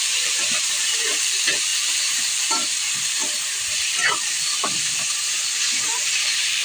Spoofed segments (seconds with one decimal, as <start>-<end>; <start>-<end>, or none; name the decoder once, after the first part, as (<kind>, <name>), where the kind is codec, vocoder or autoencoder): 0.0-3.2 (vocoder, BigVGAN v2); 3.7-5.0; 5.7-6.6